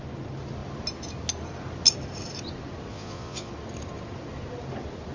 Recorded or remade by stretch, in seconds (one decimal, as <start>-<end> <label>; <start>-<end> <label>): 0.0-2.9 recorded; 2.9-3.5 remade; 3.5-5.1 recorded